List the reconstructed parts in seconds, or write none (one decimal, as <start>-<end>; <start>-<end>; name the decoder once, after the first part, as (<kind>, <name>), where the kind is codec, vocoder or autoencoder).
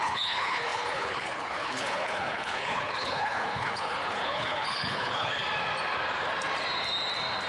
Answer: 0.0-5.4 (codec, HILCodec)